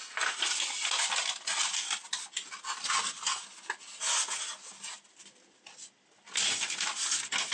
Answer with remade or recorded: recorded